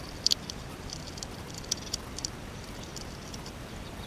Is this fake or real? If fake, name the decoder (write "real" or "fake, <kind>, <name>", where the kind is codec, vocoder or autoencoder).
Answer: fake, vocoder, BigVGAN v2